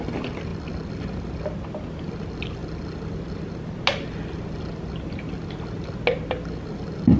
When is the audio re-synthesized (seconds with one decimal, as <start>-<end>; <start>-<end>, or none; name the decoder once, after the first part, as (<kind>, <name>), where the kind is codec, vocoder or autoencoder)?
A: none